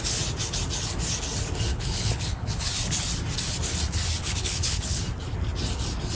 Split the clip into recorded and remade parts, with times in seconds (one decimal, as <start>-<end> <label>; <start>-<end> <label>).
0.0-1.7 recorded; 1.7-2.7 remade; 2.7-4.2 recorded; 4.2-5.0 remade; 5.0-6.1 recorded